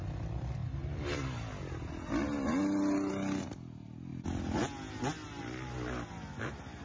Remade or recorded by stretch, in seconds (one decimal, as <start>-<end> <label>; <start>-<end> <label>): 0.0-6.8 recorded